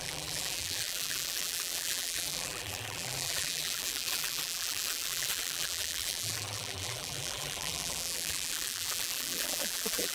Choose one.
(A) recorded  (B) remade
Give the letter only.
B